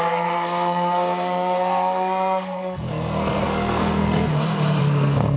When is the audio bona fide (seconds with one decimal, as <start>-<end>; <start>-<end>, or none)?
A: 4.3-4.8